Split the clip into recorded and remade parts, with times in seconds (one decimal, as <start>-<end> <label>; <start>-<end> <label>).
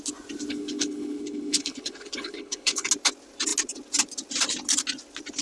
0.0-0.5 recorded; 0.5-2.9 remade; 2.9-5.4 recorded